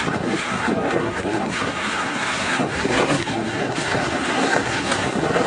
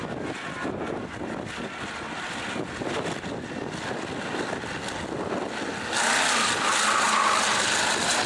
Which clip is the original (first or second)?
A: second